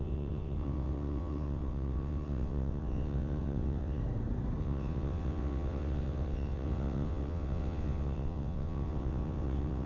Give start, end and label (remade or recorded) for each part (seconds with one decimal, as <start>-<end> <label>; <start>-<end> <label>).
0.0-4.0 remade; 4.0-4.6 recorded; 4.6-9.9 remade